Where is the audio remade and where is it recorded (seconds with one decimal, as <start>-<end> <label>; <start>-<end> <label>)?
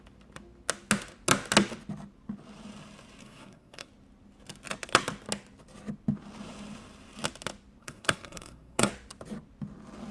0.0-3.2 recorded; 3.2-3.9 remade; 3.9-7.8 recorded; 7.8-8.9 remade; 8.9-10.1 recorded